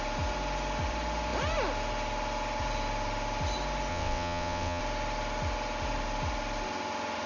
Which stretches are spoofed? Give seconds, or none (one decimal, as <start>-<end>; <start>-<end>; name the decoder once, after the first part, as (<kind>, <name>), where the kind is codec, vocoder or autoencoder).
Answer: 3.9-4.8 (vocoder, WaveNeXt)

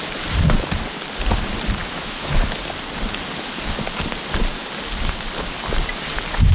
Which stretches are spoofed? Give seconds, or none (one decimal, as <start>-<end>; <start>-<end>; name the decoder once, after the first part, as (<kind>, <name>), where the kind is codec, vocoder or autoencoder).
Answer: 1.8-2.4 (autoencoder, DAC-VAE)

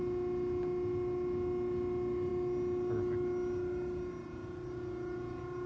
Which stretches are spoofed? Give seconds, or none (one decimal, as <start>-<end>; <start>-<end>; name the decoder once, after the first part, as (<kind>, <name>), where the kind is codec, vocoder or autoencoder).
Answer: none